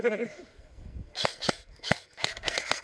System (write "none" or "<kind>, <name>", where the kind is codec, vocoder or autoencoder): codec, SNAC